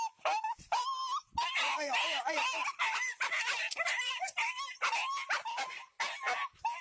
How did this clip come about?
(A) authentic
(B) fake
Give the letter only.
A